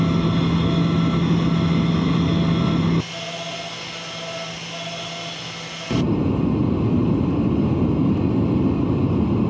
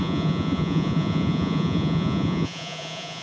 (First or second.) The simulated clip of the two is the second